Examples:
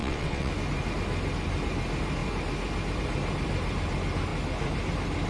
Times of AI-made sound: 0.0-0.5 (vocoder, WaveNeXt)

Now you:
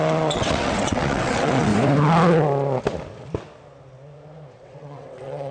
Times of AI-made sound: 0.0-1.7 (vocoder, WaveNeXt); 4.5-5.5

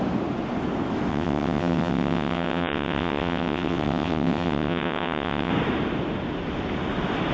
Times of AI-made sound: 1.1-5.5 (vocoder, WaveNeXt)

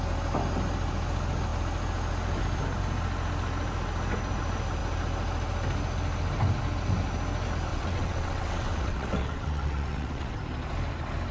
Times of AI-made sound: 7.7-10.4 (vocoder, WaveNeXt)

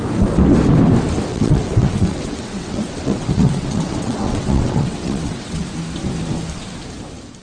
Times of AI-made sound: 1.3-5.7 (vocoder, WaveNeXt)